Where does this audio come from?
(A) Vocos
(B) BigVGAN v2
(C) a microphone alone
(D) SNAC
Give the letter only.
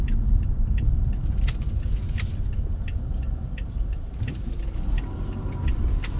B